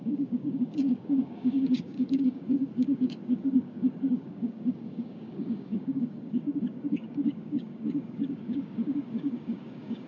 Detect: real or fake fake